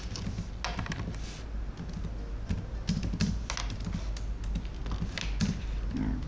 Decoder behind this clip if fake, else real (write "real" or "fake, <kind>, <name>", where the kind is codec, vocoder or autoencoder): real